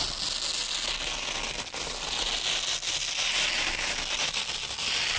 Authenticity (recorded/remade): recorded